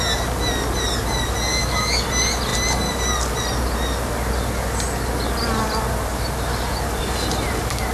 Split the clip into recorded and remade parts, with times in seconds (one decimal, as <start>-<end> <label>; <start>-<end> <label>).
0.0-1.5 recorded; 1.5-2.0 remade; 2.0-7.9 recorded